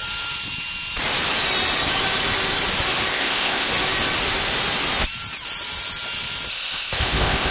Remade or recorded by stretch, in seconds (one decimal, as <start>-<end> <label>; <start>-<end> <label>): 0.0-3.1 recorded; 3.1-3.7 remade; 3.7-6.5 recorded; 6.5-7.5 remade